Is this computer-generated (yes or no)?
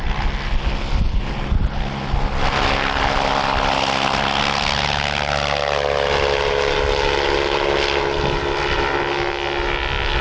no